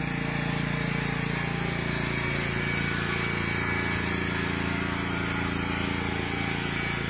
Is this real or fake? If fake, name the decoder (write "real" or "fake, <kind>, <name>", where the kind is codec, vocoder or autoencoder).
real